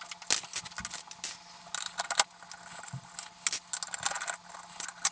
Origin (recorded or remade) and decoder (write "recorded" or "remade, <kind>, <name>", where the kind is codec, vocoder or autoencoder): recorded